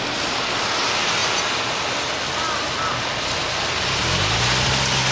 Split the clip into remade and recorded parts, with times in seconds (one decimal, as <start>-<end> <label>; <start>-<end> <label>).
0.0-5.1 recorded